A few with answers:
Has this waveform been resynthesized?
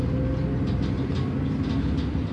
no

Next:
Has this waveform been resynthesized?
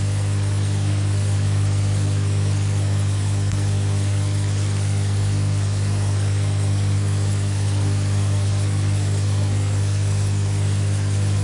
yes